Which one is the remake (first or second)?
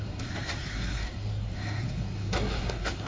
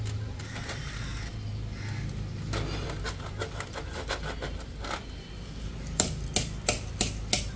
first